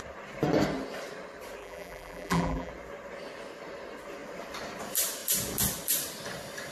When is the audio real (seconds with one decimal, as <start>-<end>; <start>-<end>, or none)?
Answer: 0.0-1.6; 2.7-6.7